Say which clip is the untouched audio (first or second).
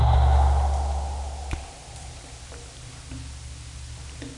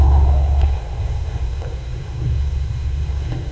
first